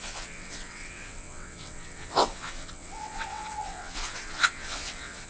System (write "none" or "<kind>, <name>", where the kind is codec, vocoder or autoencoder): vocoder, WaveNeXt